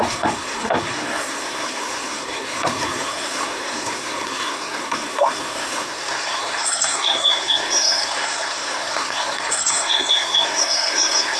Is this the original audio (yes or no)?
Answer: no